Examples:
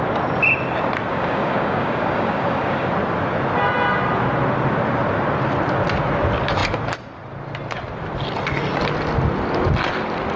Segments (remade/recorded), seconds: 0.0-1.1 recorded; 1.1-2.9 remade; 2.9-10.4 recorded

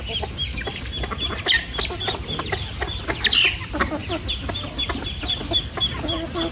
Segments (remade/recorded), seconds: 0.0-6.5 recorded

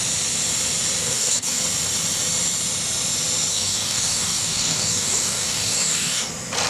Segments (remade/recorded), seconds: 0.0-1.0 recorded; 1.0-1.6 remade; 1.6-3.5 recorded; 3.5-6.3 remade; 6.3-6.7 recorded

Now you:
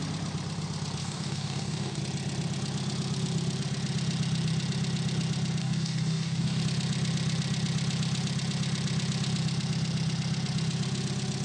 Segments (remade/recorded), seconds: 0.0-1.0 recorded; 1.0-2.0 remade; 2.0-5.6 recorded; 5.6-6.6 remade; 6.6-11.4 recorded